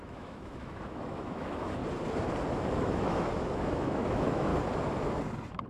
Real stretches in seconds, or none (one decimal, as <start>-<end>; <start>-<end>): 1.8-2.8; 4.5-5.7